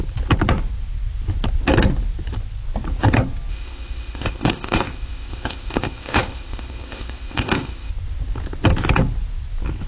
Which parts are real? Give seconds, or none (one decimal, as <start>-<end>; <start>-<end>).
0.0-3.5; 7.9-9.9

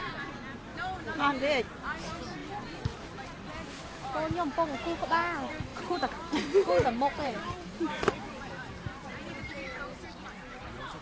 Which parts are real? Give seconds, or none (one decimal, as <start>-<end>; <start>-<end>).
0.0-0.7; 1.3-5.7; 10.6-11.0